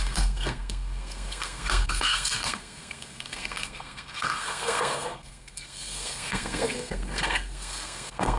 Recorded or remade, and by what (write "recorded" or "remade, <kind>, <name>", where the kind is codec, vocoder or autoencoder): remade, codec, SNAC